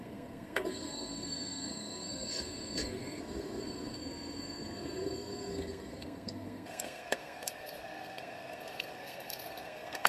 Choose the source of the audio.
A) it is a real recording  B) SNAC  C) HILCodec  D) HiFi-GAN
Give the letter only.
B